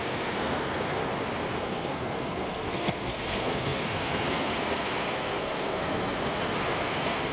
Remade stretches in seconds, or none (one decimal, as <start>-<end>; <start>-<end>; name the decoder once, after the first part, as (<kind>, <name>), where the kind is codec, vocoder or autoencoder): 0.0-1.0 (codec, SNAC); 1.5-7.3